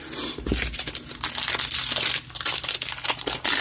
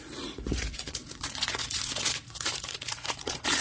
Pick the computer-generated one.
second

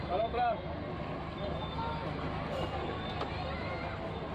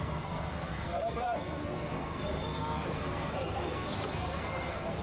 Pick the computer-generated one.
second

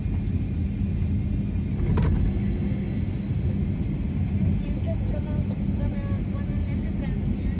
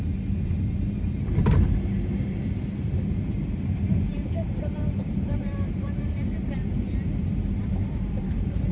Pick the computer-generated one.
second